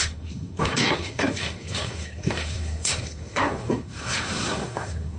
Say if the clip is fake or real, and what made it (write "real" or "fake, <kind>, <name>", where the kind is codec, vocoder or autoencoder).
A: fake, codec, SNAC